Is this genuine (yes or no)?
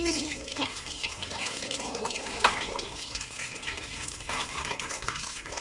no